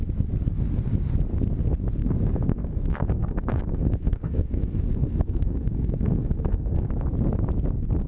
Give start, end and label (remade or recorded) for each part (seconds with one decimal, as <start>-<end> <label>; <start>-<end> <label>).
0.0-2.0 recorded; 2.0-6.9 remade; 6.9-8.1 recorded